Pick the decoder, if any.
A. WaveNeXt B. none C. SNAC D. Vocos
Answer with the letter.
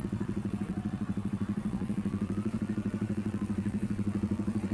A